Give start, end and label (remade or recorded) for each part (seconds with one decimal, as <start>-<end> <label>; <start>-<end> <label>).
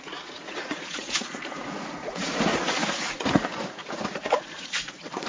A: 0.0-5.3 remade